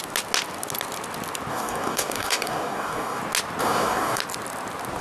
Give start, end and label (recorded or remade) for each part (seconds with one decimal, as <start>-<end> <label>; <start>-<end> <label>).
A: 0.0-1.5 recorded; 1.5-3.2 remade; 3.2-3.6 recorded; 3.6-4.2 remade; 4.2-5.0 recorded